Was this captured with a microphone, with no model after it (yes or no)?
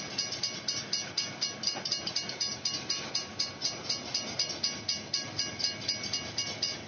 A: yes